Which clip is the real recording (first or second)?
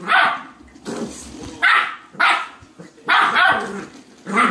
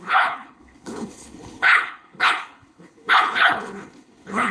first